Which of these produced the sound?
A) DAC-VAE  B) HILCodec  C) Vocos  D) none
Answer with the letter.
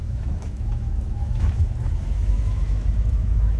A